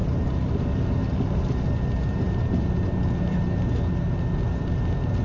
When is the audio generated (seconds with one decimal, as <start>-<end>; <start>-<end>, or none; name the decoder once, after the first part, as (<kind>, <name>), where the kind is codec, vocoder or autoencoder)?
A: 2.0-3.4 (vocoder, BigVGAN v2)